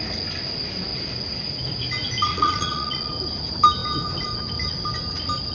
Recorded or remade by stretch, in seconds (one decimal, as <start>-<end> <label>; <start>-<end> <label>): 0.0-2.3 recorded; 2.3-3.1 remade; 3.1-5.5 recorded